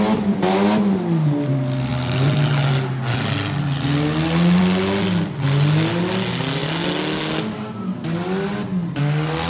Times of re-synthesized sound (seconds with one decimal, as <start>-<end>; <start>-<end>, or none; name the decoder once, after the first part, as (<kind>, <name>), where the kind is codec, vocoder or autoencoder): none